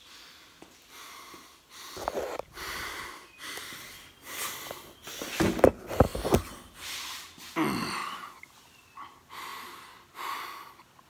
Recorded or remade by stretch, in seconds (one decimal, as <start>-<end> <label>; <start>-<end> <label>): 0.0-11.1 recorded